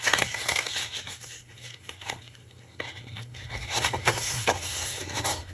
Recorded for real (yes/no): no